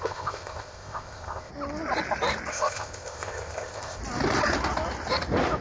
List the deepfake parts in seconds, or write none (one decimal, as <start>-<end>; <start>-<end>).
0.0-1.5; 2.5-4.0